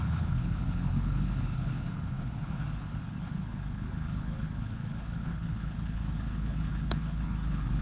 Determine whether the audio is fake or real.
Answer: fake